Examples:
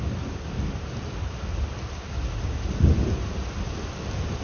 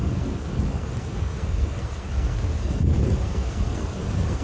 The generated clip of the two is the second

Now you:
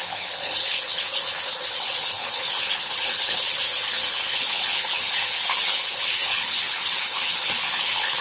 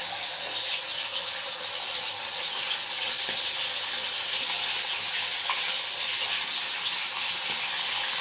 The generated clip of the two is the first